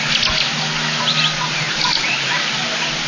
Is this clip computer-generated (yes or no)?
no